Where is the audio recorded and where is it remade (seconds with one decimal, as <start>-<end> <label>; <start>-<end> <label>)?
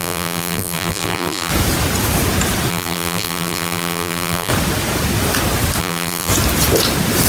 0.0-1.5 remade; 1.5-2.7 recorded; 2.7-4.5 remade; 4.5-5.8 recorded; 5.8-6.3 remade; 6.3-7.3 recorded